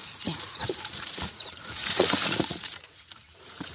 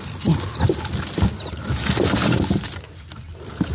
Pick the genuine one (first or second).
second